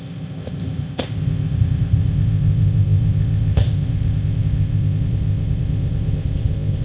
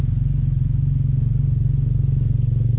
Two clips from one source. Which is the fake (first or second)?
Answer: first